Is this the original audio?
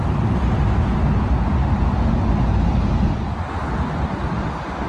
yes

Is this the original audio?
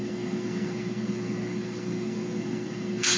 no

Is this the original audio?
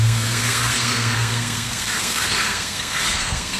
no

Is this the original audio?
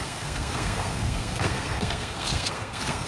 no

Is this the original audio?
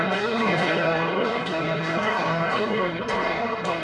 no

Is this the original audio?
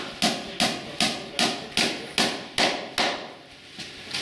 yes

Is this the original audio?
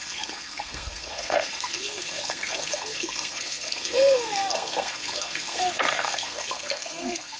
no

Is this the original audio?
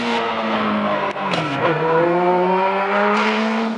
no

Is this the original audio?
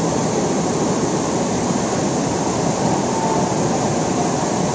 yes